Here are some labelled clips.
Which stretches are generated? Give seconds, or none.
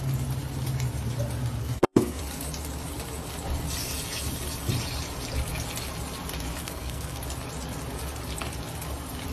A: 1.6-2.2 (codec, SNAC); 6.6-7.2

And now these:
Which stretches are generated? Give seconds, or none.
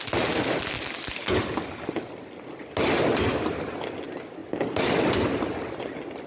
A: none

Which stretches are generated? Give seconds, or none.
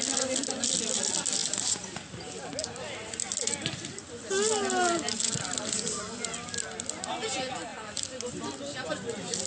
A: none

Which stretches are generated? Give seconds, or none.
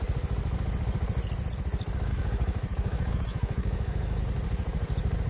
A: 2.1-4.2 (autoencoder, DAC-VAE)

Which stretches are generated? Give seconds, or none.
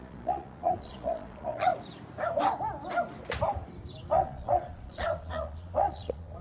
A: 0.0-1.7 (vocoder, Vocos); 4.1-6.4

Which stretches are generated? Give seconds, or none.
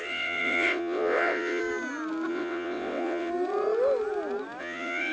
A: 0.0-1.6 (vocoder, WaveNeXt); 2.3-3.3; 4.6-5.1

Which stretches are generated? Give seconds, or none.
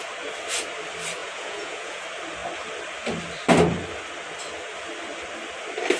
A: 1.2-2.0 (vocoder, Vocos)